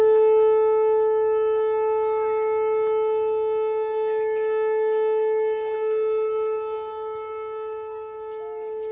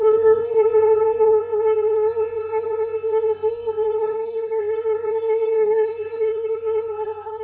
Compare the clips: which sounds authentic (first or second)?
first